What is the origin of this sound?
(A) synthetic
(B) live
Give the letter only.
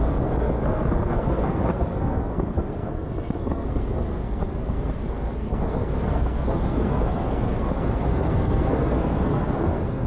A